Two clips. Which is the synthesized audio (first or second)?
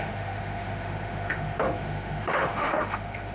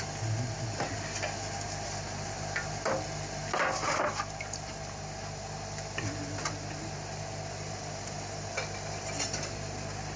first